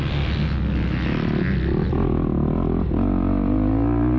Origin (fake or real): real